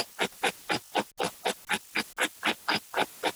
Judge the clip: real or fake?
real